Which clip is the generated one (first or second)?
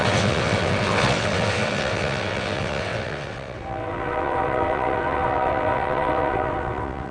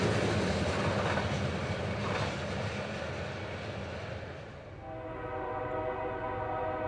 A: first